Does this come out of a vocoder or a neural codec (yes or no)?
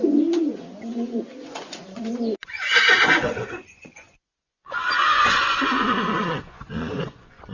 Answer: yes